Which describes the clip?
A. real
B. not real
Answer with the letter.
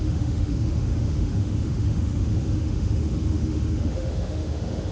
B